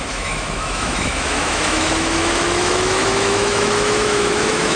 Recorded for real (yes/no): no